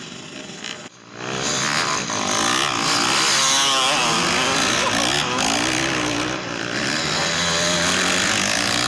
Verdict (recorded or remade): recorded